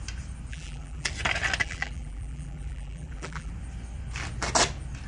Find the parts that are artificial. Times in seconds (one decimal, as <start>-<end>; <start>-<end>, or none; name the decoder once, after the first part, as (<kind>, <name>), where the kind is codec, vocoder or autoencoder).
0.5-1.1 (vocoder, BigVGAN v2); 1.6-3.5